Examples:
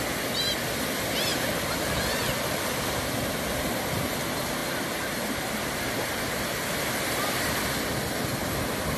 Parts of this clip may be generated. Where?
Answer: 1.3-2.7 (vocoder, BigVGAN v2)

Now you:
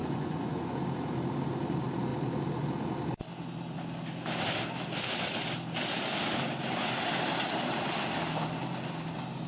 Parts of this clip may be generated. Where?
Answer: 0.0-0.7 (vocoder, Vocos)

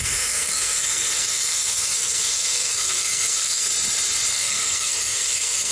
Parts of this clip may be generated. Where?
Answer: 0.0-3.7 (codec, SNAC); 4.3-5.7

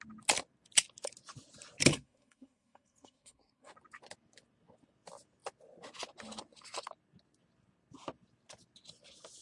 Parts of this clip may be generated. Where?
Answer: 1.9-3.7 (codec, SNAC)

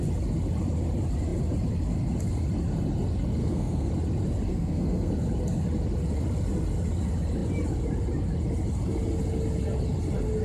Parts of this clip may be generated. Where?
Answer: 3.4-3.9 (codec, SNAC); 4.5-5.1

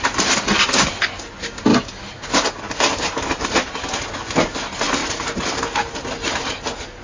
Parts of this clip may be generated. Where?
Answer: none

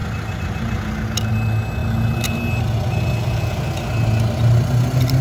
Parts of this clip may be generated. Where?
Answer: none

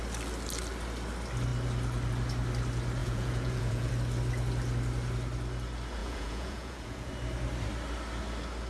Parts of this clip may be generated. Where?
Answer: 3.0-3.9 (vocoder, Vocos); 6.0-7.1